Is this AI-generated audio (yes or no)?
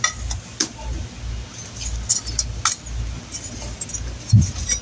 no